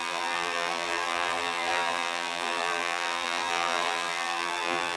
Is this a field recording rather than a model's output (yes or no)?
no